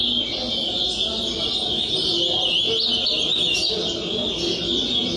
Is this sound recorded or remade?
recorded